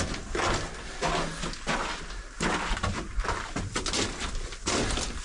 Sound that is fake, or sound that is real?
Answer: real